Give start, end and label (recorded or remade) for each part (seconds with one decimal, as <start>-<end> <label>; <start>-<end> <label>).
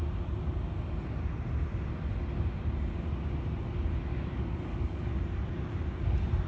0.0-4.1 recorded; 4.1-5.2 remade; 5.2-6.5 recorded